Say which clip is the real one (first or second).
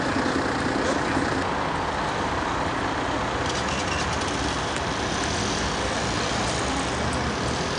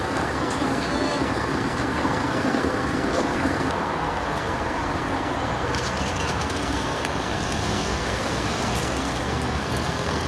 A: first